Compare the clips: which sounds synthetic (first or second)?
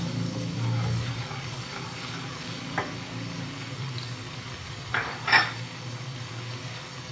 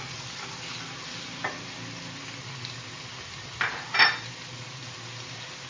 first